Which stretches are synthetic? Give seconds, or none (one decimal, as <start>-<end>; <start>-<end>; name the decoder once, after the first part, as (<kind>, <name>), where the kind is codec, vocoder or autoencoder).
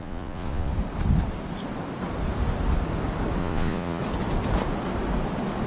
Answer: 0.0-0.7 (vocoder, Vocos); 3.4-4.0